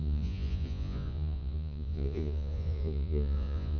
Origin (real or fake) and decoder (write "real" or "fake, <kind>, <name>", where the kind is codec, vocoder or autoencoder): fake, vocoder, Vocos